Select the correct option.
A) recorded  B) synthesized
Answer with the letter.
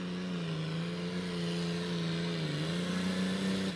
A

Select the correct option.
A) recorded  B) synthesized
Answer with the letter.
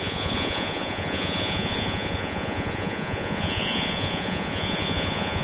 B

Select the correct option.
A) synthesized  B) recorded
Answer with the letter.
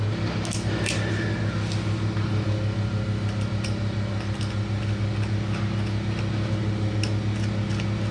B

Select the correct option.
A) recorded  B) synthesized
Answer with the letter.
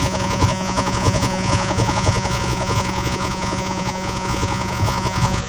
B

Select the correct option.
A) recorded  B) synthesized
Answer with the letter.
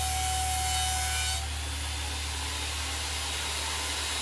A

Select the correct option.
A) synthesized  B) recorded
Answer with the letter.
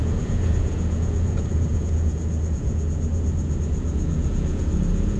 A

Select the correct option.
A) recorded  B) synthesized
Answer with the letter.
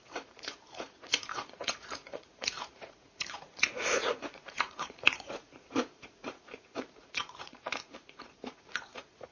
B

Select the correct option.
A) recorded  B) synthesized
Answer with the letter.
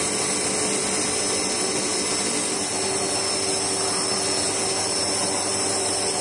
A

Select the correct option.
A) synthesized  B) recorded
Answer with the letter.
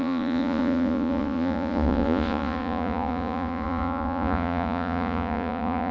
A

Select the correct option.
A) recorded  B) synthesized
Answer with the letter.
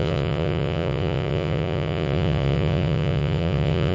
B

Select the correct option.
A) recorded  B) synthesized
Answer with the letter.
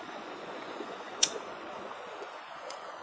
B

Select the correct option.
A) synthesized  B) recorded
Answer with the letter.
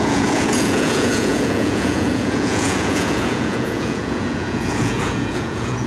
A